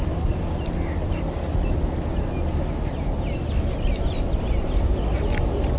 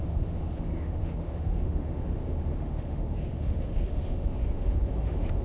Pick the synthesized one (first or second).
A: second